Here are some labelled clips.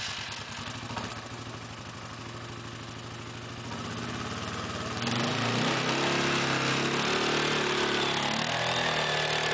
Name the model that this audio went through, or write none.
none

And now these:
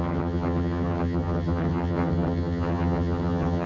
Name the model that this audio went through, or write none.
vocoder, HiFi-GAN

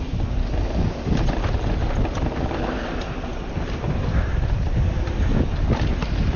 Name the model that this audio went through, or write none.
none